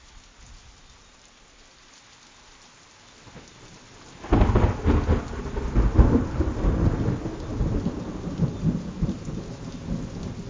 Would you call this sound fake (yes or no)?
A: no